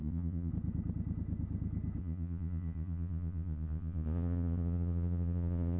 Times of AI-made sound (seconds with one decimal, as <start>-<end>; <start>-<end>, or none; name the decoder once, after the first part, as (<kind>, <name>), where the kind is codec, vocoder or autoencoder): 0.0-0.5 (vocoder, Vocos); 2.0-5.8